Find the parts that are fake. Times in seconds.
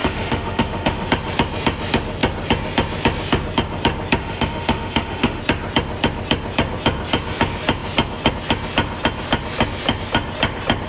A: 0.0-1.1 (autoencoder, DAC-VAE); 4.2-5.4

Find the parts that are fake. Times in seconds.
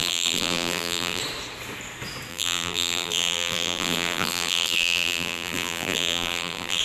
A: 0.0-1.2 (vocoder, BigVGAN v2); 2.3-6.8